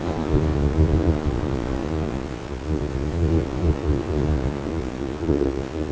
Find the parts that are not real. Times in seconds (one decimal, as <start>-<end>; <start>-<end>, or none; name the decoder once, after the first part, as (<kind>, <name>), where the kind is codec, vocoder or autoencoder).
0.0-5.9 (vocoder, Vocos)